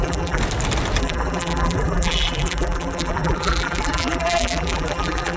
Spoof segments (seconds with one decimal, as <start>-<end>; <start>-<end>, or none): 0.0-0.4; 1.0-5.4